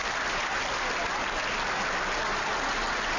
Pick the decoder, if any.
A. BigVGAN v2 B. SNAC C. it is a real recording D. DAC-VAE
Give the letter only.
C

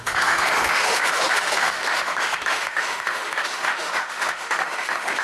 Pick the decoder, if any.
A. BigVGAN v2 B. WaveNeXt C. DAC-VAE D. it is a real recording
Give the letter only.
C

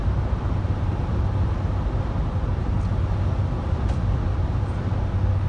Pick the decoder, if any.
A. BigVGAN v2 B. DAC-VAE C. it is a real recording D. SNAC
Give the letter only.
C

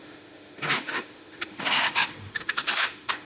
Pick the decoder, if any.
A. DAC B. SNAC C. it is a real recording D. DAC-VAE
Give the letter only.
D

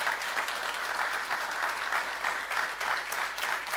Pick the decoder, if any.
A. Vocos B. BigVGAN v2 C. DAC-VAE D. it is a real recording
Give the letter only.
D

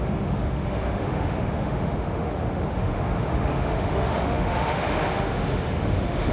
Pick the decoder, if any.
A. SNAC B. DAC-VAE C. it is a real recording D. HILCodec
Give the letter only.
B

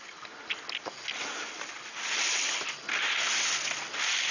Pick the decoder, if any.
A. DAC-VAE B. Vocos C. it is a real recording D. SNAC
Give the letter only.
C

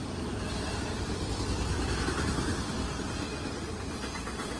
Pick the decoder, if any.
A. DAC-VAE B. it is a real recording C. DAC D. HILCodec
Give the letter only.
B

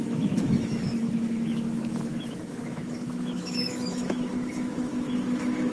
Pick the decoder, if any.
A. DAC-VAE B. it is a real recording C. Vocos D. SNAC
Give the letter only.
A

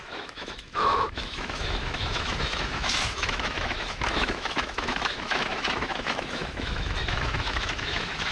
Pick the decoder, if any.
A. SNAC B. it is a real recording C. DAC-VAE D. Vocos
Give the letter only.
C